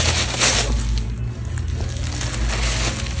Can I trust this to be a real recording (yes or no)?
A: yes